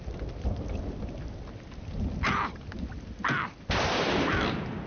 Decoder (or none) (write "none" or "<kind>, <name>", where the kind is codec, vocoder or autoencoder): none